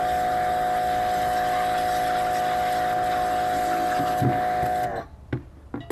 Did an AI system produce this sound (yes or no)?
no